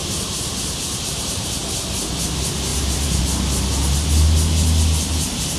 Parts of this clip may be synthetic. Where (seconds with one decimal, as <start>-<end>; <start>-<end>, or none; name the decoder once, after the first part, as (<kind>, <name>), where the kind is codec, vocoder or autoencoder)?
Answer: 0.0-2.1 (vocoder, BigVGAN v2); 2.7-3.2